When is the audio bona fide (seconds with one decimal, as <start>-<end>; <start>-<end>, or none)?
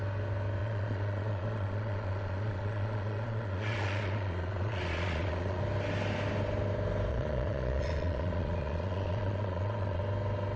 0.0-0.6; 5.6-7.1; 10.0-10.6